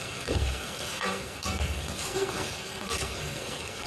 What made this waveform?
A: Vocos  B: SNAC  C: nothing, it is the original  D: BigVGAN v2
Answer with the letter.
B